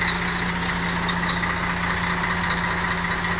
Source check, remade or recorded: recorded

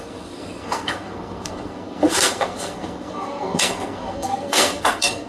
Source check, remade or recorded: remade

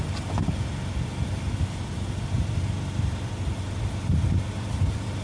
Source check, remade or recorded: recorded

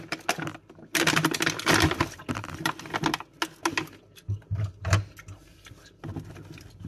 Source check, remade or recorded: recorded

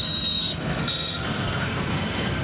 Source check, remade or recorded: remade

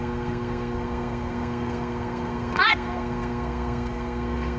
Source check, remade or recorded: remade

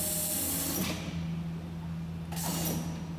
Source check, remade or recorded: recorded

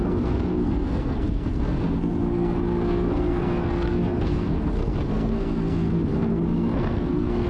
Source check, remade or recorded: remade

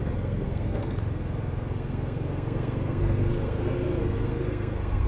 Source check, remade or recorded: remade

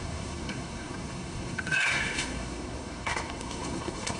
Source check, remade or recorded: remade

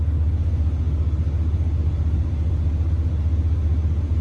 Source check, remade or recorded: recorded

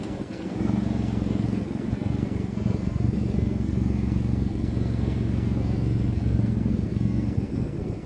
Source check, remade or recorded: remade